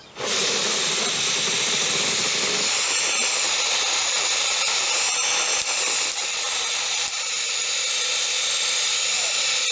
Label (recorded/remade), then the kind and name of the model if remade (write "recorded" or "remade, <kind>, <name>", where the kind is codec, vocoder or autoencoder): recorded